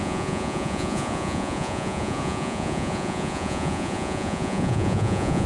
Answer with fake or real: fake